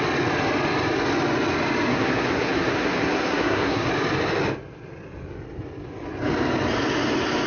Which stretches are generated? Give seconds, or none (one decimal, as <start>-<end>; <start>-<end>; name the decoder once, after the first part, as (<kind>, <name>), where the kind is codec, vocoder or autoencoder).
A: 1.9-3.9 (codec, SNAC)